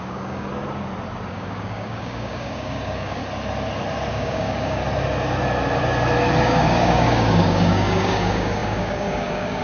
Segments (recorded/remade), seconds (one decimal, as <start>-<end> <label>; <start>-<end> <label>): 0.0-0.5 remade; 0.5-1.3 recorded; 1.3-3.2 remade; 3.2-4.1 recorded; 4.1-4.8 remade; 4.8-6.4 recorded; 6.4-9.6 remade